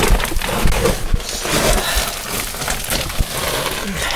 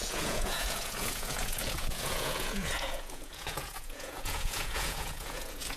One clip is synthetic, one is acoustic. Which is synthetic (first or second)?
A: second